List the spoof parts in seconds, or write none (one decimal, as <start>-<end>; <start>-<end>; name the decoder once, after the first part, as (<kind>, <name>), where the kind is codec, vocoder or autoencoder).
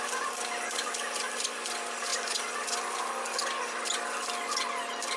none